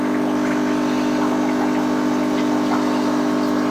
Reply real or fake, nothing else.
real